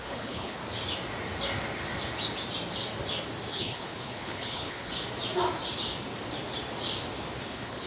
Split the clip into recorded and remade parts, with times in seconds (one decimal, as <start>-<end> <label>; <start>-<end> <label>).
0.0-0.6 remade; 0.6-3.5 recorded; 3.5-4.9 remade; 4.9-7.4 recorded; 7.4-7.9 remade